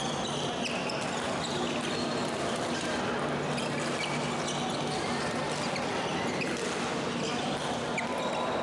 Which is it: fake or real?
real